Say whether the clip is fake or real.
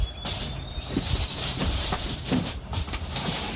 fake